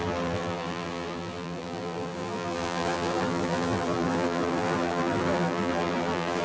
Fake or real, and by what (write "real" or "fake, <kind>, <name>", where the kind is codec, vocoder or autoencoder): fake, vocoder, BigVGAN v2